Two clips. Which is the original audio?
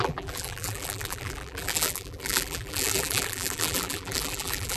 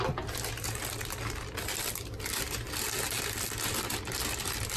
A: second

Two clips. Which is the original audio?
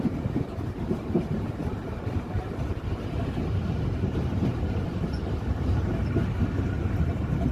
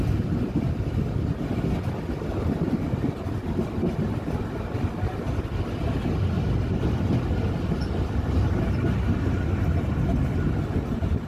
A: second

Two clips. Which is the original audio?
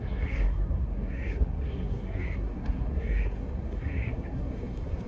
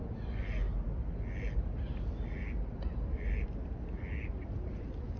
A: second